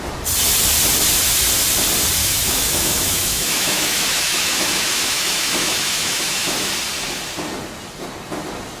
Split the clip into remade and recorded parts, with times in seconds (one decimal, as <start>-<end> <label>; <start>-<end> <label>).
0.0-2.2 recorded; 2.2-6.7 remade; 6.7-8.8 recorded